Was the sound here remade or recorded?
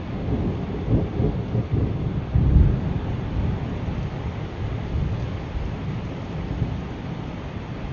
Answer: recorded